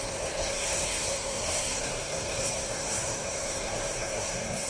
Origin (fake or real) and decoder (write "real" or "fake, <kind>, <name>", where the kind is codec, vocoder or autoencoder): fake, codec, SNAC